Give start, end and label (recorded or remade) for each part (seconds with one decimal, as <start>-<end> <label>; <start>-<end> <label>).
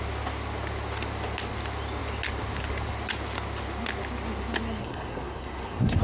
0.0-4.8 recorded; 4.8-6.0 remade